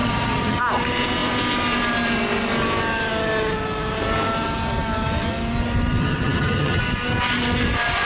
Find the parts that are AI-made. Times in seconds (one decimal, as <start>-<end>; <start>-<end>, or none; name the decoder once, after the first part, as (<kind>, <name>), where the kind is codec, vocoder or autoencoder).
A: 0.0-0.6 (vocoder, HiFi-GAN); 6.0-6.8